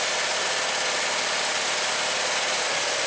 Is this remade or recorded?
recorded